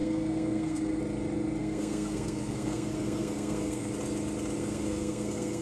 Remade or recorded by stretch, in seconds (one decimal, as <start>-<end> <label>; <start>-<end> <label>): 0.0-1.0 remade; 1.0-1.6 recorded; 1.6-3.9 remade; 3.9-4.6 recorded; 4.6-5.6 remade